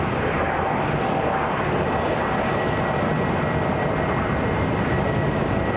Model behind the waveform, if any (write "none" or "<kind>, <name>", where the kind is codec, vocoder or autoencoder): none